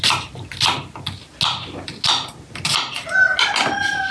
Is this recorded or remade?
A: recorded